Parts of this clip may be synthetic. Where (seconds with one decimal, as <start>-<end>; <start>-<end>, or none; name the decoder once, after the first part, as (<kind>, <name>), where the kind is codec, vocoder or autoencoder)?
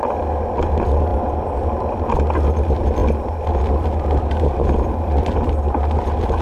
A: none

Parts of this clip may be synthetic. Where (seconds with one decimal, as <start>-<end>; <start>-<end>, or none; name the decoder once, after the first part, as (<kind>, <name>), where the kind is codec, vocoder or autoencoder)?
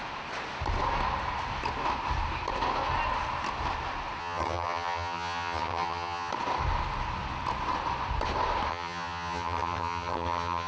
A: 4.2-6.3 (vocoder, HiFi-GAN); 8.7-10.7